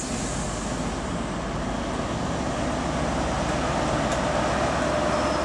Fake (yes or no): no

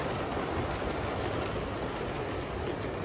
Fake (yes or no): no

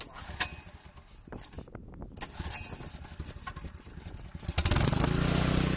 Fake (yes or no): no